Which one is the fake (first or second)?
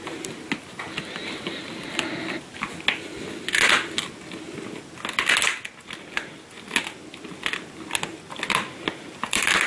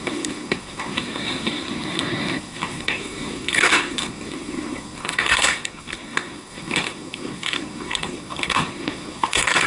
second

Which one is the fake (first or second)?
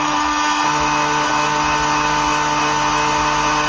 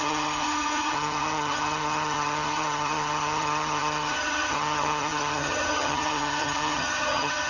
second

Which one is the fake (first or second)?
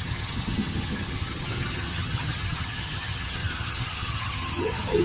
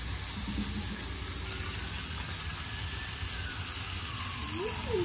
first